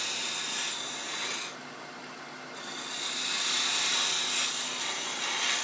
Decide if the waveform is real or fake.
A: real